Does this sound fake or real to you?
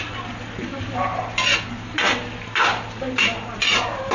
real